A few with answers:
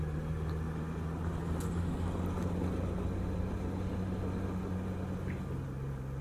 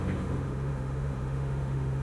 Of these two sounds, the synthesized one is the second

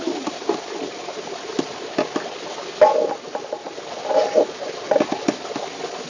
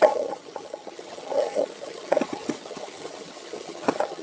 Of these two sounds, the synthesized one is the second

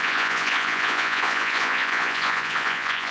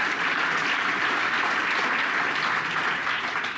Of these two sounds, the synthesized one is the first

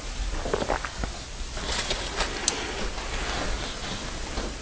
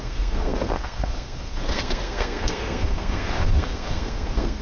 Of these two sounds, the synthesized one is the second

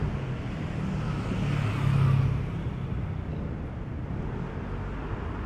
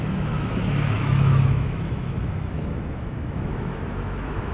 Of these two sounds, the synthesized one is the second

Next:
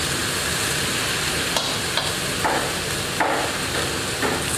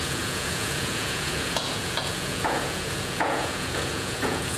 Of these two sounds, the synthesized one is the second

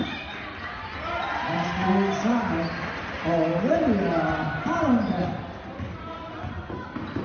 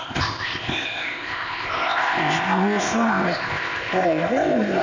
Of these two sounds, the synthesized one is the second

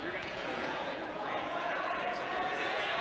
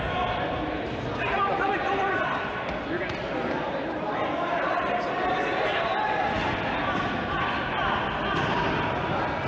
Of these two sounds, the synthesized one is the first